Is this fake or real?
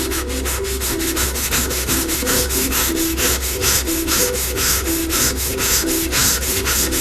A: fake